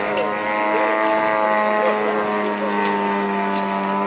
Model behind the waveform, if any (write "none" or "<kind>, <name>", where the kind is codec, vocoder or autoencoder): none